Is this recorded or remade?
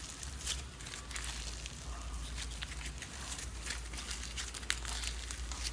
recorded